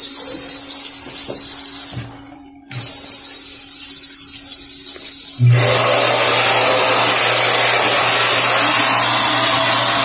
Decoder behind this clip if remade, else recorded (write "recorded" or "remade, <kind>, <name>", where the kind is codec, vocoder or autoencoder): recorded